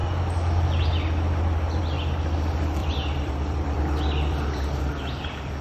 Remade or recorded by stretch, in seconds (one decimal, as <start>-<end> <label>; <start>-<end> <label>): 0.0-2.8 recorded; 2.8-4.8 remade; 4.8-5.6 recorded